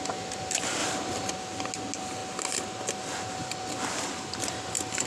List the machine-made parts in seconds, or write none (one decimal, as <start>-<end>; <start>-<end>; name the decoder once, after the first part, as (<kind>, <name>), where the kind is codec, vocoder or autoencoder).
0.8-1.3 (vocoder, BigVGAN v2); 3.4-4.3